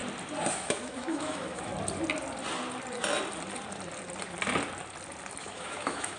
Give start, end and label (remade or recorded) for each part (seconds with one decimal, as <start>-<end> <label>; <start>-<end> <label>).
0.0-0.5 recorded; 0.5-1.7 remade; 1.7-5.4 recorded; 5.4-6.2 remade